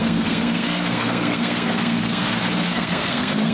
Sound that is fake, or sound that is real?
fake